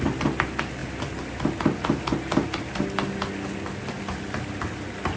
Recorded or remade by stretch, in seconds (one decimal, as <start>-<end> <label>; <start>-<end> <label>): 0.0-5.2 recorded